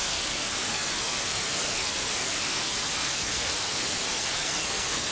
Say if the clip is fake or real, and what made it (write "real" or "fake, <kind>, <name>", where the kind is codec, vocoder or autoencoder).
fake, codec, SNAC